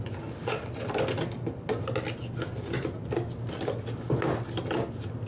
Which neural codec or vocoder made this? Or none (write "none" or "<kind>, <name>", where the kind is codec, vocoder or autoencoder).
none